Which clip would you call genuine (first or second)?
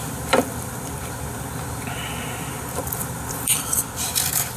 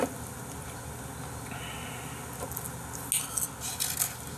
second